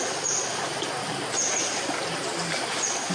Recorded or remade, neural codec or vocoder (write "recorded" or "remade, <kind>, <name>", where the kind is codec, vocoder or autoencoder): recorded